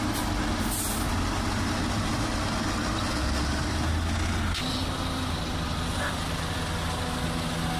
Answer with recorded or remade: recorded